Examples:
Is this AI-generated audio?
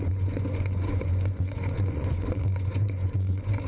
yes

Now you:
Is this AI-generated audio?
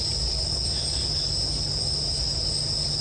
no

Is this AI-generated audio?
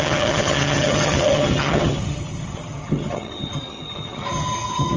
yes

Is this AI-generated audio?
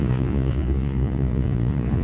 yes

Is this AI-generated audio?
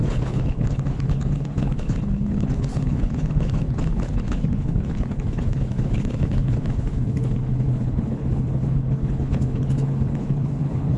yes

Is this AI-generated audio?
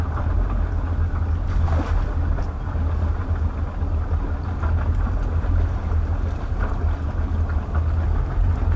no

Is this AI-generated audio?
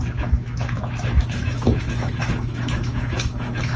yes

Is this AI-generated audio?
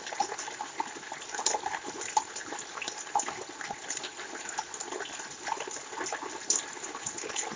no